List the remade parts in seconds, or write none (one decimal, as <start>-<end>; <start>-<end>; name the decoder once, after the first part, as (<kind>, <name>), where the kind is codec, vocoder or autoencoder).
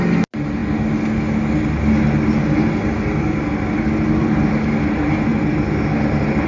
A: none